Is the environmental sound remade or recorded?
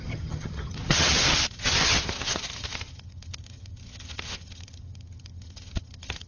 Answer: remade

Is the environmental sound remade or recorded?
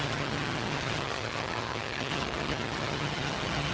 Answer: remade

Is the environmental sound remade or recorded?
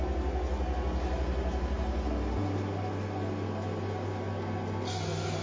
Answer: recorded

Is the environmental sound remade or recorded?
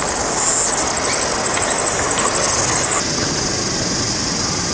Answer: recorded